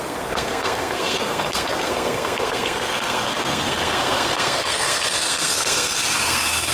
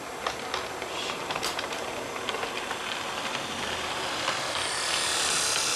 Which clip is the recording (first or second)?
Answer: second